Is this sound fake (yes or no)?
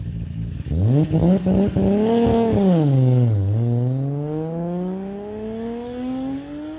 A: yes